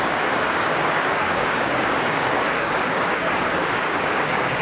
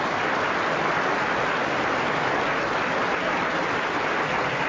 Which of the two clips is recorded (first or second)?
second